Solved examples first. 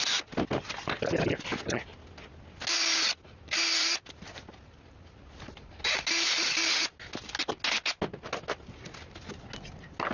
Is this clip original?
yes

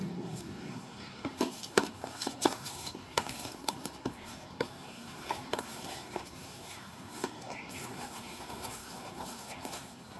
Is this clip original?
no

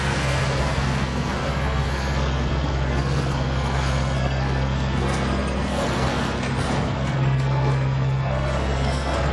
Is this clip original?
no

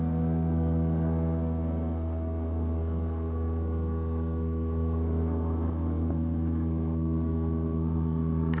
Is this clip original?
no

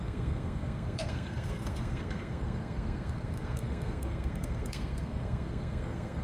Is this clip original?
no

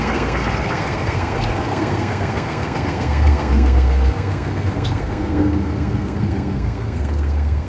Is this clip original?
no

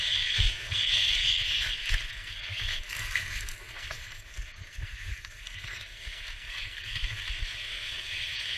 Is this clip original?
no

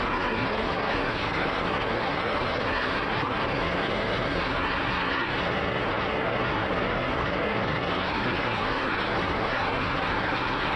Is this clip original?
no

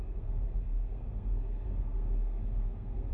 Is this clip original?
no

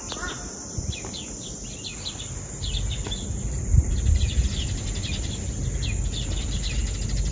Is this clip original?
yes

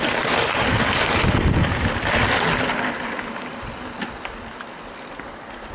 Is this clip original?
yes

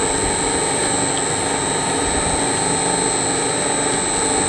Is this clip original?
yes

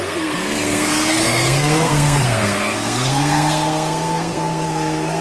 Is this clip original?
no